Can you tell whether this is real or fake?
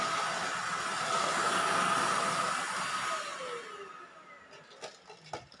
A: real